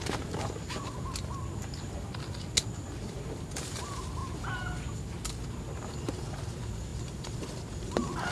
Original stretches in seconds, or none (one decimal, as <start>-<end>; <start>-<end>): 0.0-6.9